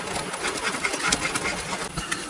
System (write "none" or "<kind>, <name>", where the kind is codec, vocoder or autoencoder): none